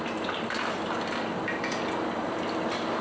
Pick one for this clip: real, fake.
real